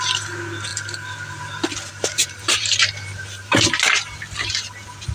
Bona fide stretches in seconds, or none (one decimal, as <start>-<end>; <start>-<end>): 0.0-1.9; 3.9-5.1